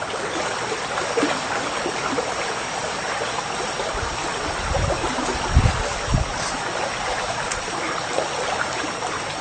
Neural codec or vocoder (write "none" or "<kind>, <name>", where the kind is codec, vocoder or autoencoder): none